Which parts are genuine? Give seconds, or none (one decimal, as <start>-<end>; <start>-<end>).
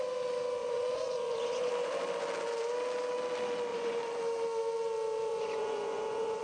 0.0-0.6; 1.7-3.7; 4.2-5.3